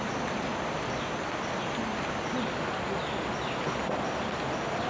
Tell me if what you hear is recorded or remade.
recorded